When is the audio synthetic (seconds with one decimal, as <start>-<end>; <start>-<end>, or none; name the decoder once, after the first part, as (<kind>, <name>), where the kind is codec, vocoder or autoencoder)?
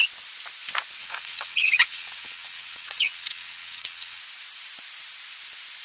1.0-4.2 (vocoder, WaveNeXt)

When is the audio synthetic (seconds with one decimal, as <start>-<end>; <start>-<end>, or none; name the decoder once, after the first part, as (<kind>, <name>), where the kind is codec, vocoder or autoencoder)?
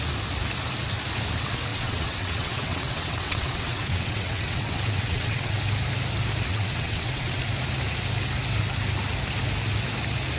1.7-5.6 (vocoder, WaveNeXt); 6.5-7.4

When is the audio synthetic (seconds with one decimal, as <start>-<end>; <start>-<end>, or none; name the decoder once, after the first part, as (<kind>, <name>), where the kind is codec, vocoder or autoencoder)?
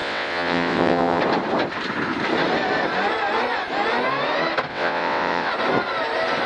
0.0-1.2 (vocoder, WaveNeXt); 4.7-5.5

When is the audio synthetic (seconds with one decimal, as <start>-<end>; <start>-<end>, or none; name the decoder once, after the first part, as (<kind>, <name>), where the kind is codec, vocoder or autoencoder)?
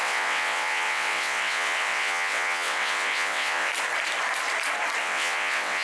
0.0-3.7 (vocoder, WaveNeXt); 5.0-5.8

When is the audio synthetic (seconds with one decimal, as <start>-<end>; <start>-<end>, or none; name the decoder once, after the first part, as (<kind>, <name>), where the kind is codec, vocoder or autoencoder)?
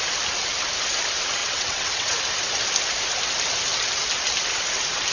1.4-2.2 (vocoder, WaveNeXt)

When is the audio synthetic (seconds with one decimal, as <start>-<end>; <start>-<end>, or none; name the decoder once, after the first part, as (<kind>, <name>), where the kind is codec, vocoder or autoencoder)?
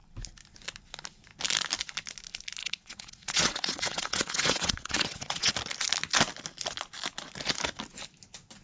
2.6-5.5 (vocoder, WaveNeXt)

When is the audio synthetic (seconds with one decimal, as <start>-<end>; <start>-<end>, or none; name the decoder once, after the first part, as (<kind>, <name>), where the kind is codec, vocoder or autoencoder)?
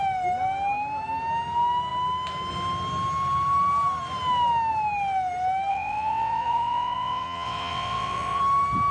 5.7-8.4 (vocoder, WaveNeXt)